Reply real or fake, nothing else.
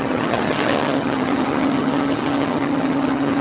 fake